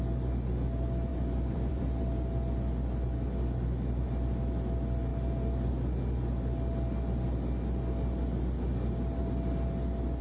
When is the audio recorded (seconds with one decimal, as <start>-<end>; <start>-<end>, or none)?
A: 0.0-1.1; 2.0-10.2